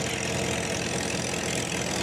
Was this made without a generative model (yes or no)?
yes